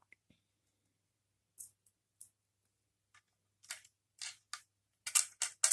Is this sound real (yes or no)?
yes